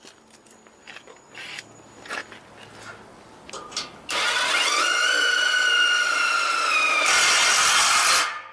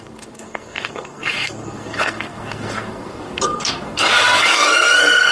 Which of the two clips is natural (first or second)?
first